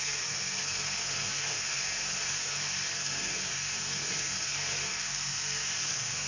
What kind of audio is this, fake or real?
fake